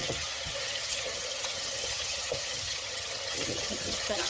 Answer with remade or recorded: remade